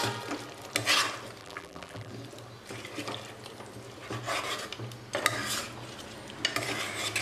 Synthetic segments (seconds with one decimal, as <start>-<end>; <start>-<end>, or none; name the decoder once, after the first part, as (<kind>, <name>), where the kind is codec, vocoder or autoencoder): 1.4-2.1 (vocoder, BigVGAN v2)